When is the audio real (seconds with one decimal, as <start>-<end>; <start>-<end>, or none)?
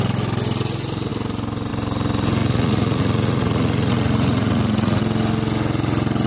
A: 0.0-2.4; 5.0-6.3